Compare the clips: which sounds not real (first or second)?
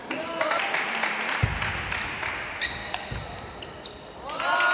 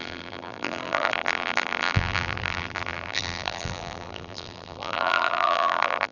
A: second